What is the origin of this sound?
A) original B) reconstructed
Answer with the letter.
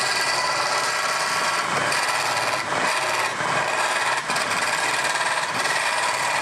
A